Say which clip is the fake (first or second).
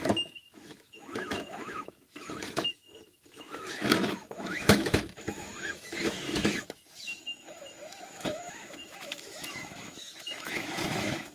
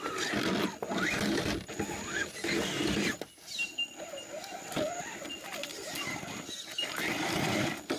first